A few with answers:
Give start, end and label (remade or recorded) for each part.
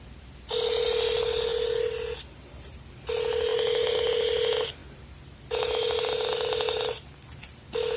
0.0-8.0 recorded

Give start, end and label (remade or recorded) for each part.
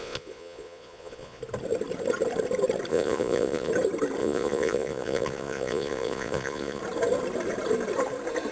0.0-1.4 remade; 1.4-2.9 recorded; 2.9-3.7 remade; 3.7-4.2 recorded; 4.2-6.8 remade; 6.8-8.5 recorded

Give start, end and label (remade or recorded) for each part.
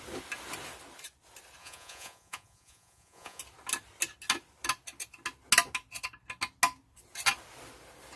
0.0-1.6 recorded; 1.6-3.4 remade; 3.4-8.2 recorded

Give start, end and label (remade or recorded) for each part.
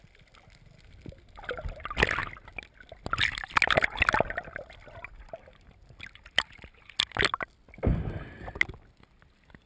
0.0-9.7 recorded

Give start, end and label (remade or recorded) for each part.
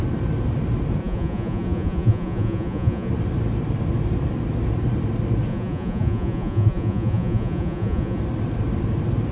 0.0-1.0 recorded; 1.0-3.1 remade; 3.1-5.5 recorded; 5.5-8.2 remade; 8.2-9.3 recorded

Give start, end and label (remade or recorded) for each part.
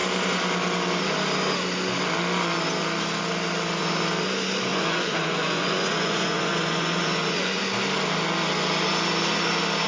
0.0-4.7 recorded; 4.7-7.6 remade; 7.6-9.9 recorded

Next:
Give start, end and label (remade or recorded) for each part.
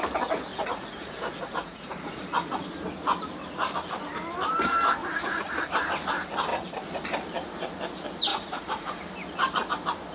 0.0-0.5 recorded; 0.5-2.7 remade; 2.7-5.0 recorded; 5.0-5.7 remade; 5.7-6.5 recorded; 6.5-7.0 remade; 7.0-8.3 recorded; 8.3-9.0 remade; 9.0-10.1 recorded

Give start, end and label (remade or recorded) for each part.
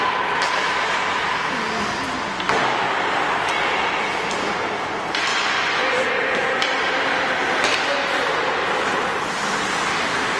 0.0-5.3 recorded; 5.3-6.0 remade; 6.0-10.4 recorded